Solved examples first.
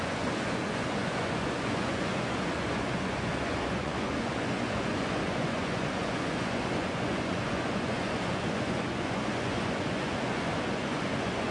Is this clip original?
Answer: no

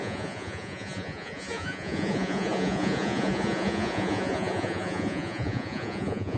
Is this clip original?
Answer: no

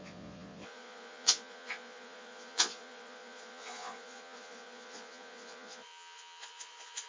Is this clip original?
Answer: no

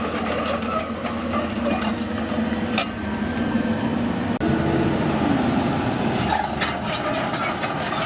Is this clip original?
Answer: yes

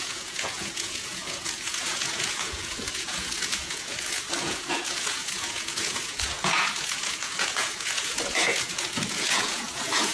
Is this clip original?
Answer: no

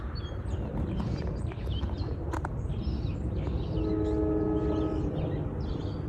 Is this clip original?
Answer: yes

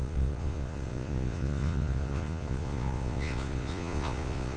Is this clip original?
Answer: no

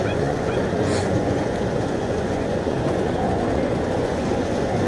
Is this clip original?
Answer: no